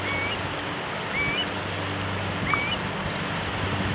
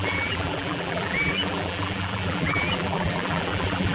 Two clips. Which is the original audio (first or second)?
first